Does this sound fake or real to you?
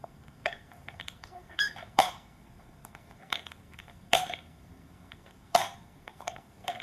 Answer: fake